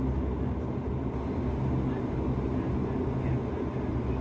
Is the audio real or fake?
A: real